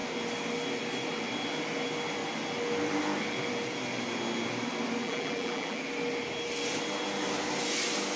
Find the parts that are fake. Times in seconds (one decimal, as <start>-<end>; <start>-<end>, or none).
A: 5.0-5.8